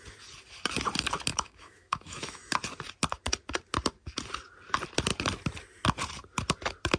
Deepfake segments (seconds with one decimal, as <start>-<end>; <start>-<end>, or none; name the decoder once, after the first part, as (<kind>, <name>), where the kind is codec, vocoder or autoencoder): 1.3-2.5 (autoencoder, DAC-VAE)